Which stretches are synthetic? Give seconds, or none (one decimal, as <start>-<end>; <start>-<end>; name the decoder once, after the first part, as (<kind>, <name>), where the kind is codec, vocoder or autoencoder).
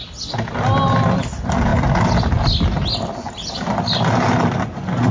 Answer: none